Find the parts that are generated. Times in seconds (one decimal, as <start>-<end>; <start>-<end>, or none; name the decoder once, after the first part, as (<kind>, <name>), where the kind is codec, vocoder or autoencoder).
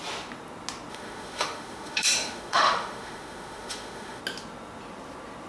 0.9-4.2 (autoencoder, DAC-VAE)